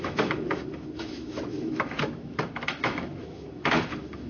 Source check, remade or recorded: remade